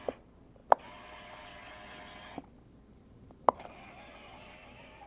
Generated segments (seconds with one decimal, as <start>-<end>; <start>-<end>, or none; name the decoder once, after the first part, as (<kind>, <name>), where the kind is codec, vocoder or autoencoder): none